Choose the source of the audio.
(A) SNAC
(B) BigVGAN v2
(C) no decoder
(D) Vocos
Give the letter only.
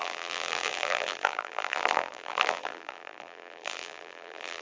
B